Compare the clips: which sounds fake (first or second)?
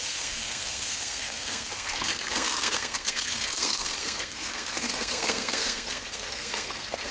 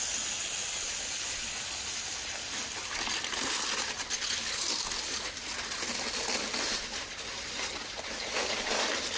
first